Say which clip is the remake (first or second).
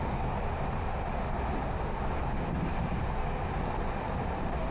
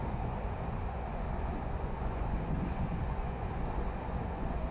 second